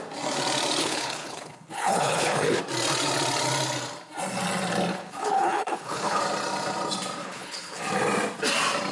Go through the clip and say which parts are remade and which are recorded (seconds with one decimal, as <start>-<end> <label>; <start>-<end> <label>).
0.0-0.8 recorded; 0.8-2.6 remade; 2.6-4.9 recorded; 4.9-6.2 remade; 6.2-7.2 recorded; 7.2-7.8 remade; 7.8-8.9 recorded